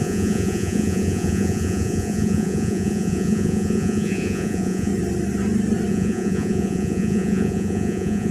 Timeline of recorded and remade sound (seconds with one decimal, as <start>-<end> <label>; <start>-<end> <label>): 0.0-4.9 remade; 4.9-5.9 recorded; 5.9-8.3 remade